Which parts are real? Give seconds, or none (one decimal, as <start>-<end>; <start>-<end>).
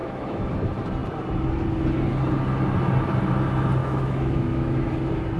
0.5-3.8; 4.9-5.4